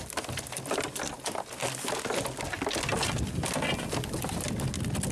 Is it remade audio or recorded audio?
recorded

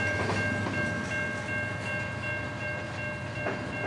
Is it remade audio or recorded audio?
recorded